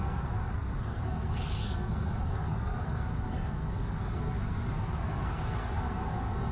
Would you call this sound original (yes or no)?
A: no